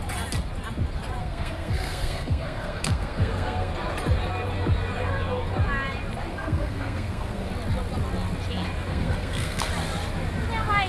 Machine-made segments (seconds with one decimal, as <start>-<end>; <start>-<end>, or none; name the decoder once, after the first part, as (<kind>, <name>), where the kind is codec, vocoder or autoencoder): 1.2-3.7 (codec, SNAC); 6.3-7.5; 8.9-9.7